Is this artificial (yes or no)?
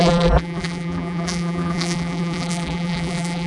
yes